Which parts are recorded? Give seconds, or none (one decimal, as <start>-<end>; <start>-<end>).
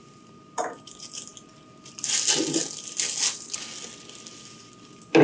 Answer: 0.0-5.2